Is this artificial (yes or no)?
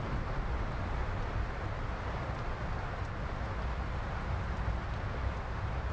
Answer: no